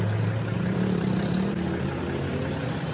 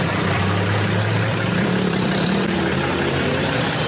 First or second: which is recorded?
first